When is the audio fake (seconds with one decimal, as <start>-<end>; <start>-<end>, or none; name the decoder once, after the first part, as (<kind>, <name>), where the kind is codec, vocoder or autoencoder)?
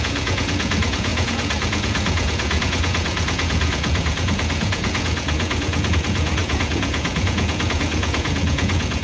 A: 0.0-9.0 (vocoder, Vocos)